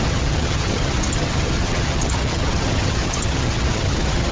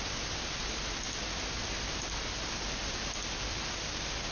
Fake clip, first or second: first